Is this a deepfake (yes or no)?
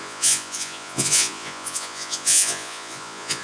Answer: yes